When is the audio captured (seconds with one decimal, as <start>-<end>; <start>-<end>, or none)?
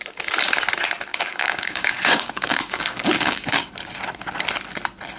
0.0-1.1; 3.7-5.2